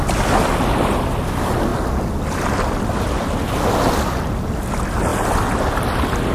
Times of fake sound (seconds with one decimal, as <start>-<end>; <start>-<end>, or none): none